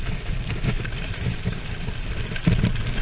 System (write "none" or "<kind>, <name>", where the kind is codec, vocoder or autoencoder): none